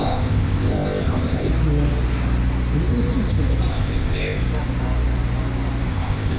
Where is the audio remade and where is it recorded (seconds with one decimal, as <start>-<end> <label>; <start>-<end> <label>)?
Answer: 0.0-1.5 remade; 1.5-3.7 recorded; 3.7-4.4 remade; 4.4-5.9 recorded; 5.9-6.4 remade